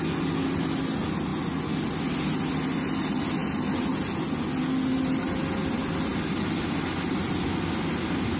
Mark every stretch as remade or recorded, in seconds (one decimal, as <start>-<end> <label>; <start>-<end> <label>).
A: 0.0-8.4 recorded